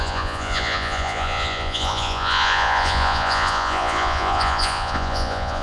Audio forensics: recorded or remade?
remade